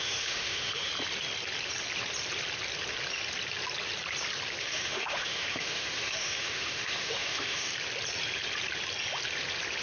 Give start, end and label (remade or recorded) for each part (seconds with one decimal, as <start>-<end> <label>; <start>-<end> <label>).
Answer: 0.0-0.9 remade; 0.9-4.6 recorded; 4.6-7.7 remade; 7.7-9.8 recorded